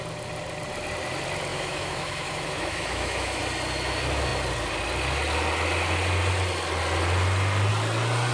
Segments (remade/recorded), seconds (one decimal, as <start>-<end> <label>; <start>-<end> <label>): 0.0-1.5 recorded; 1.5-3.4 remade; 3.4-8.3 recorded